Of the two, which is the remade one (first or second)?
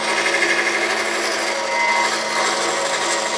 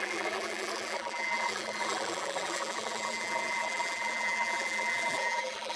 second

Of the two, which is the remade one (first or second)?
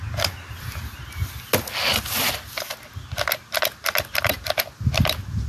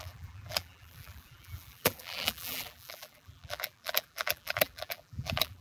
second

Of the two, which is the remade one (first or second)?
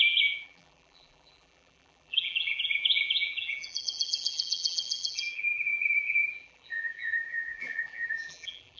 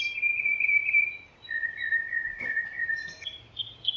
first